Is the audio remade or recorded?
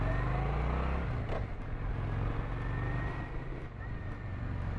recorded